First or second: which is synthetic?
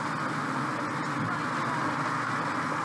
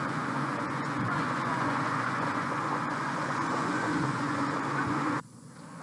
second